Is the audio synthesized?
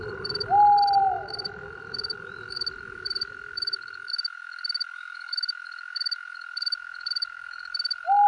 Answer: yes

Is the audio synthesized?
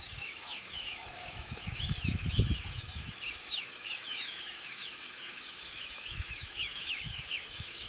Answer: yes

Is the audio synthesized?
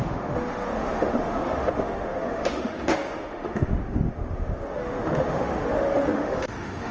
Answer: yes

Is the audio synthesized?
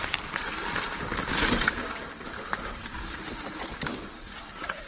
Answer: no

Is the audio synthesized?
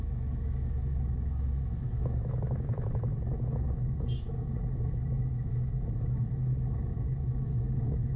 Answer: yes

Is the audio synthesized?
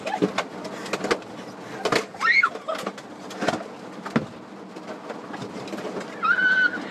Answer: no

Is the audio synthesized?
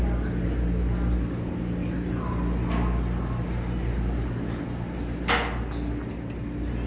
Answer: no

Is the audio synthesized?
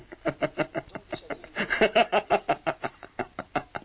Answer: no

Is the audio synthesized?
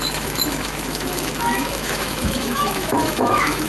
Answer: yes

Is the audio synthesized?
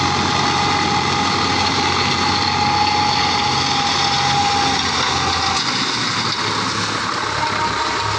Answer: no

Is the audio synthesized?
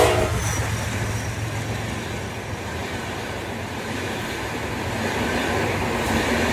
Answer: no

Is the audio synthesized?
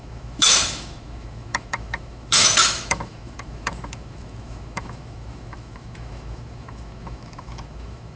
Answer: yes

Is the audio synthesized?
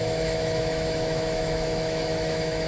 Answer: yes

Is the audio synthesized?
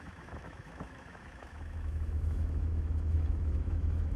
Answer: yes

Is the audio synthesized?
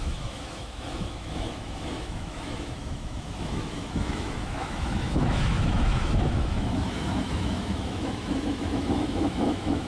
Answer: yes